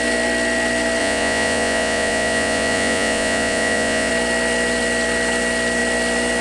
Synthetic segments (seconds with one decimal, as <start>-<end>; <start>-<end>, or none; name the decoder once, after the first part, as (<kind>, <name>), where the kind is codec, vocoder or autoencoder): 1.0-4.1 (vocoder, Vocos)